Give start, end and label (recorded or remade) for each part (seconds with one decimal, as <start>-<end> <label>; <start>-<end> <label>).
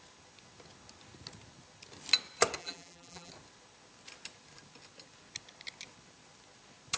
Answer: 0.0-2.6 recorded; 2.6-3.3 remade; 3.3-7.0 recorded